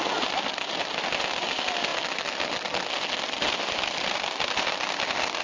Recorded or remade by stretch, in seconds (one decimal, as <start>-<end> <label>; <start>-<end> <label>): 0.0-5.4 recorded